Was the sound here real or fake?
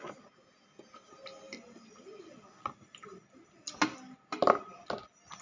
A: real